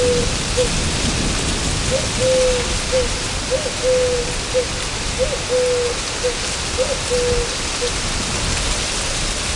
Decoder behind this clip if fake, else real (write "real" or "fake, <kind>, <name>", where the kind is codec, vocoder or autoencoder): real